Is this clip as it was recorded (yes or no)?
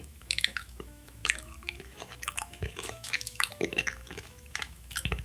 no